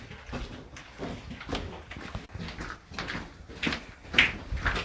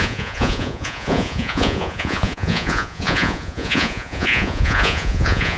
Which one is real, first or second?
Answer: first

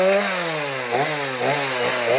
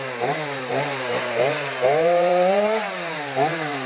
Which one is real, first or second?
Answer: first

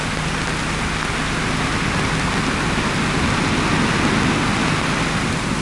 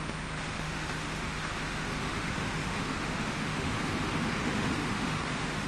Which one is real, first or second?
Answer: first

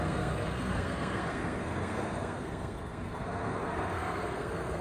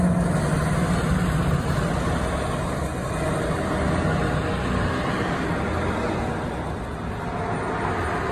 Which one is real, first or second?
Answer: second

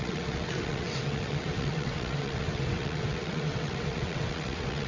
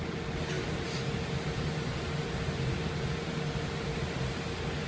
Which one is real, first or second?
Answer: second